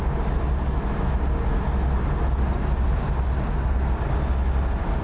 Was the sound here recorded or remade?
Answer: recorded